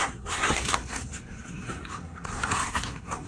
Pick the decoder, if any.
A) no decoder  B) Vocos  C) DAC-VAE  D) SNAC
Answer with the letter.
D